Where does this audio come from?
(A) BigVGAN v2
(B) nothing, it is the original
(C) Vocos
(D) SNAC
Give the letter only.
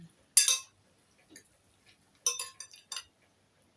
B